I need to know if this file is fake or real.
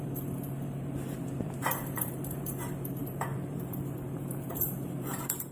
fake